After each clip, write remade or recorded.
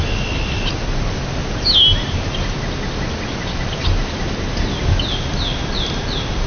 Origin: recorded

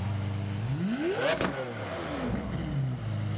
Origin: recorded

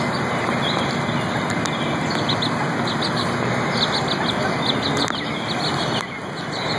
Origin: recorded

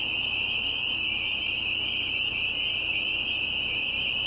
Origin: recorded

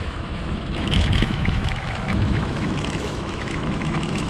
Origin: remade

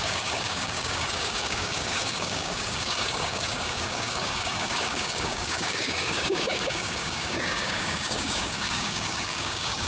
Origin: remade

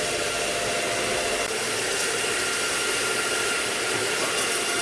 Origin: recorded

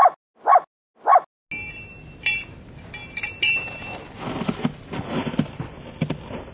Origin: recorded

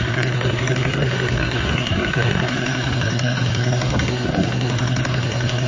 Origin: remade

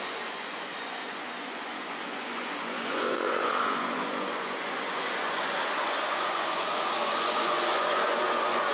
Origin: remade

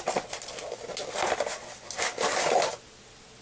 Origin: recorded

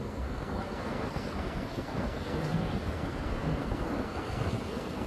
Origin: remade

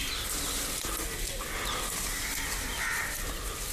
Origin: recorded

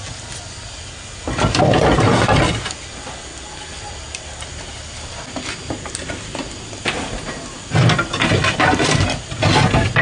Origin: recorded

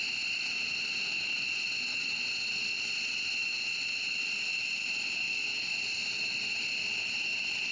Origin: recorded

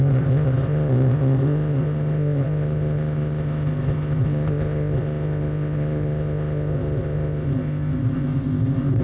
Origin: remade